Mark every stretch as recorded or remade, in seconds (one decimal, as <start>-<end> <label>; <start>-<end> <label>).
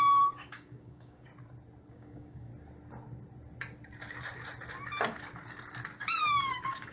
0.0-1.3 remade; 1.3-1.9 recorded; 1.9-2.5 remade; 2.5-6.2 recorded; 6.2-6.9 remade